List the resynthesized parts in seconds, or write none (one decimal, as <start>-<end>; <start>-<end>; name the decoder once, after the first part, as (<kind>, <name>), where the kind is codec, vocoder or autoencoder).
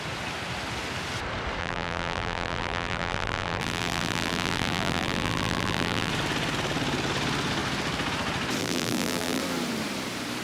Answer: 1.6-6.1 (vocoder, BigVGAN v2); 8.6-9.4